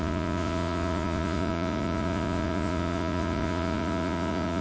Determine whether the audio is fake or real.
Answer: fake